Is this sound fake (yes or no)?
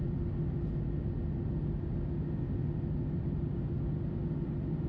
no